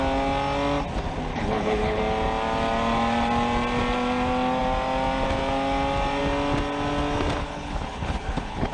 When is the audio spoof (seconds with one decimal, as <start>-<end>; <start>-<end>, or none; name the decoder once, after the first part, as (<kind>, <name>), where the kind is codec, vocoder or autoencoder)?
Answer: 1.3-2.0 (codec, HILCodec); 7.4-8.7